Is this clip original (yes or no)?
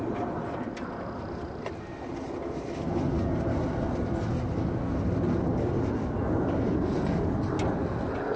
yes